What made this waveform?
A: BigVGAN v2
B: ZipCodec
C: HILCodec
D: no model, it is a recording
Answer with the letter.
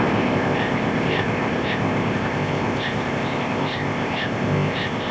B